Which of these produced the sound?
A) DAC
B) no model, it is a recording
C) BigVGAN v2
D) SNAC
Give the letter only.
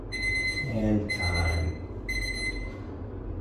B